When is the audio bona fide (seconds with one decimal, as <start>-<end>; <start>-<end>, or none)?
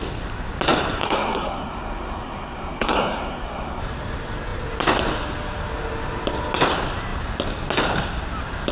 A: 0.0-1.0; 3.8-8.7